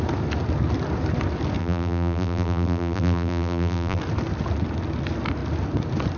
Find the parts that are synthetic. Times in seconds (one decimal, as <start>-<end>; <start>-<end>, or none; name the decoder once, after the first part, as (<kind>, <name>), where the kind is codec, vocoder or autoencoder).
1.6-4.0 (vocoder, BigVGAN v2)